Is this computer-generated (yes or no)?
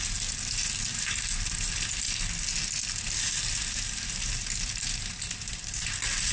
no